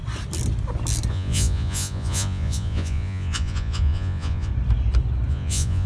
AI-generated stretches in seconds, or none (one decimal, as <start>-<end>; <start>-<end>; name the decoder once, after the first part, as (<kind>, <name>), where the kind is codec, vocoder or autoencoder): 1.1-4.5 (vocoder, Vocos); 5.3-5.9